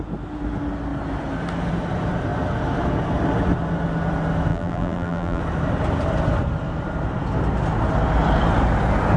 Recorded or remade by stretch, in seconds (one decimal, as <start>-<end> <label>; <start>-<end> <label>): 0.0-4.5 recorded; 4.5-5.4 remade; 5.4-9.2 recorded

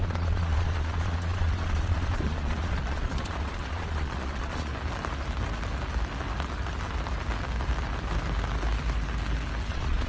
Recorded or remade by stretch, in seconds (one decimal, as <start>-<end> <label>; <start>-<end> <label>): 0.0-4.7 remade; 4.7-9.7 recorded; 9.7-10.1 remade